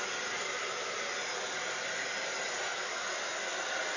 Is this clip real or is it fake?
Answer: real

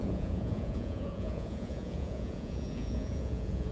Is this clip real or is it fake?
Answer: fake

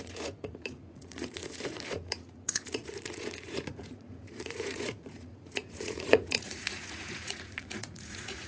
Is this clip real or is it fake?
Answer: fake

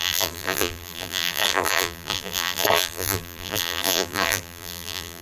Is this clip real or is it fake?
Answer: fake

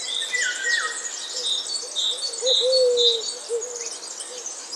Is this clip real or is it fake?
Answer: real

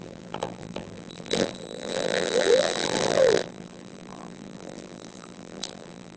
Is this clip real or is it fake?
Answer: fake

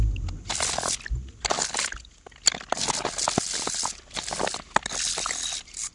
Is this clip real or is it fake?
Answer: real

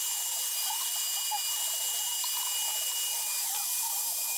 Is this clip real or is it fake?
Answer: real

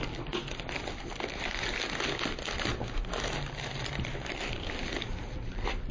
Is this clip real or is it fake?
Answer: real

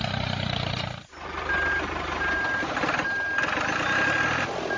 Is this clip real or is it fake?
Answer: real